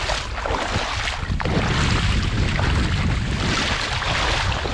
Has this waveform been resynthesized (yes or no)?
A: no